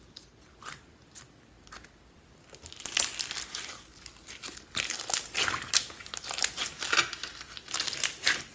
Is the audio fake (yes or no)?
no